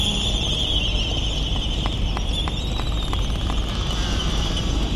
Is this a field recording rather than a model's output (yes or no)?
no